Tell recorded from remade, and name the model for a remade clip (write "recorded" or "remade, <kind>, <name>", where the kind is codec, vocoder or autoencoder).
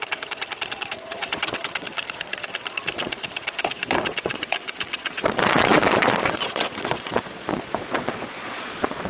remade, vocoder, Vocos